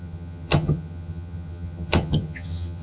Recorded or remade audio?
remade